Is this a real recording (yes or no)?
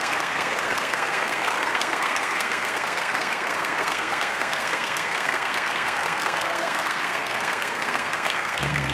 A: no